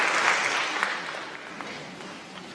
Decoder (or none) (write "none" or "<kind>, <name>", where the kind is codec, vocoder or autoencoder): none